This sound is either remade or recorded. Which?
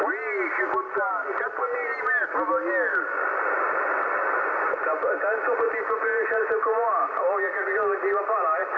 recorded